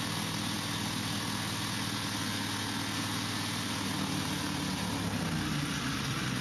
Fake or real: real